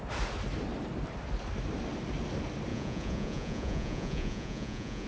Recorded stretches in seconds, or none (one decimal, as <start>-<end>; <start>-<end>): 0.0-2.7